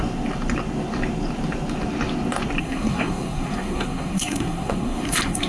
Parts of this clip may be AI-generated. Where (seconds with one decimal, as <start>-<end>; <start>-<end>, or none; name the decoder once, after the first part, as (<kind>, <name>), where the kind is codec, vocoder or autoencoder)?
2.6-5.5 (codec, SNAC)